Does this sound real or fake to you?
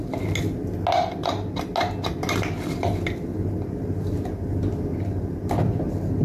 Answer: real